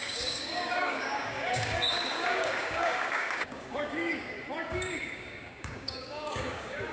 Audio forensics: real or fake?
fake